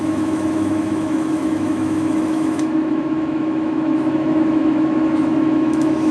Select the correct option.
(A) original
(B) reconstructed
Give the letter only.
B